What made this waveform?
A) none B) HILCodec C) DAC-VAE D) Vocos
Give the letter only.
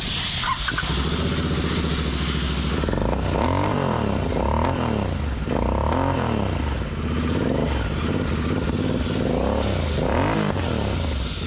A